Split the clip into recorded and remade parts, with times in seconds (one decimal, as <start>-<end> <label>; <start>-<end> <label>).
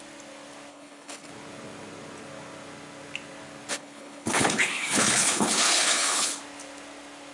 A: 0.0-0.7 recorded; 0.7-1.3 remade; 1.3-3.7 recorded; 3.7-6.4 remade; 6.4-7.3 recorded